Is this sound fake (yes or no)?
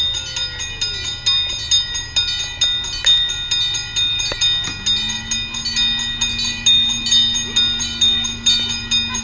no